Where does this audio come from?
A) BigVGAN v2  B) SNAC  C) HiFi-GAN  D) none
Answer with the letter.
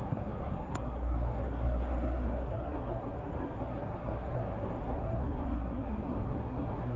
B